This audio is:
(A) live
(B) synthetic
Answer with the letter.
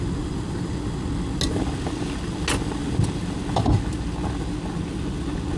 A